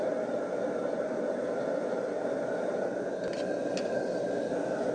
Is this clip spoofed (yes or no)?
no